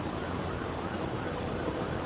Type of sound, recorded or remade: remade